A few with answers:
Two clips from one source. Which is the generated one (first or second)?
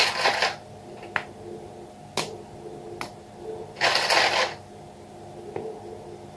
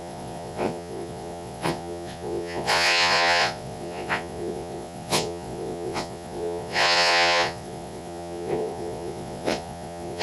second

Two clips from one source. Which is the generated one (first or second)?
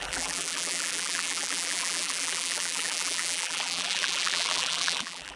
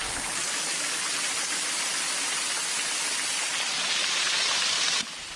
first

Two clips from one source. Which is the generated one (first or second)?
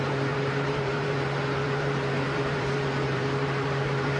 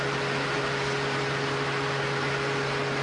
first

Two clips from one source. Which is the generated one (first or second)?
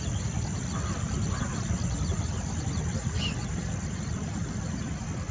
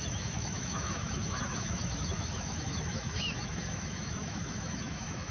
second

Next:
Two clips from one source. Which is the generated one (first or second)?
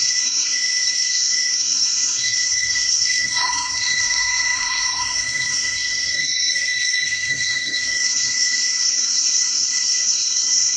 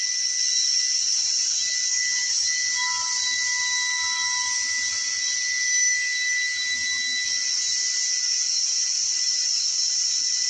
first